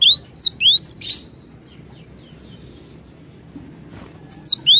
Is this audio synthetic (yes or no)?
no